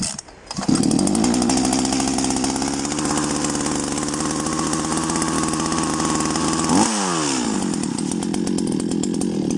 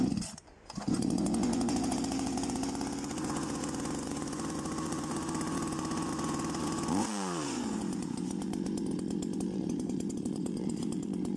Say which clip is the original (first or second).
first